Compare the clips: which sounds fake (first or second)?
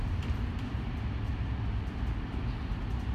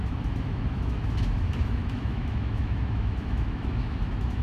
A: second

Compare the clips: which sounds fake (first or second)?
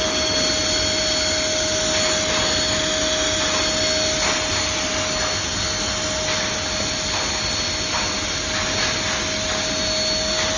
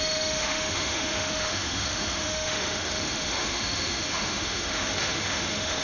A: second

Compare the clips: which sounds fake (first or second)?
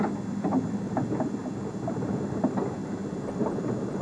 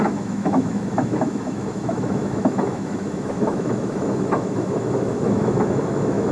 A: second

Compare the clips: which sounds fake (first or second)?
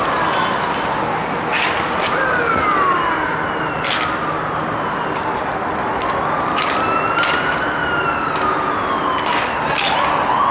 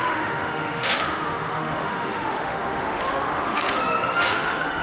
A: second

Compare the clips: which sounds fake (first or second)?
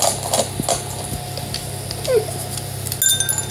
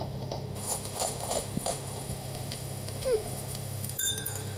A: second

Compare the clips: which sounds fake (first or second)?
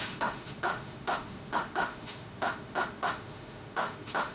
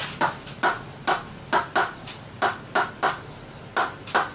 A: first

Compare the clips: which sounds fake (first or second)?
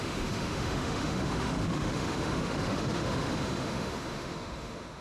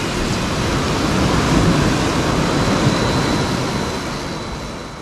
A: first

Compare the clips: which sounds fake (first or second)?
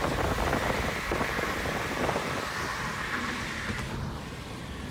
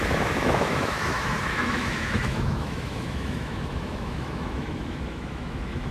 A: second